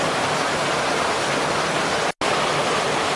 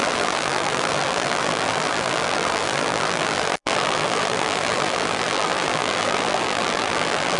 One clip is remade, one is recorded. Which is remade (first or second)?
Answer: second